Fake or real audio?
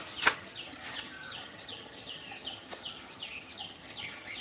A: fake